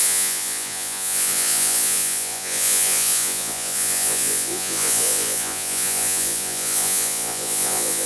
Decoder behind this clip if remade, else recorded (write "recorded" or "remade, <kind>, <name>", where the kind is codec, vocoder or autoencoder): remade, vocoder, Vocos